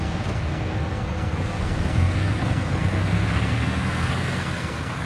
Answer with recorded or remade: remade